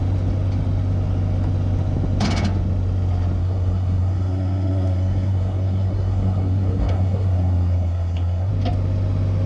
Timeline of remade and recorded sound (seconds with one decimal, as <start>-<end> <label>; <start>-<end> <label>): 0.0-3.4 recorded; 3.4-8.5 remade; 8.5-9.5 recorded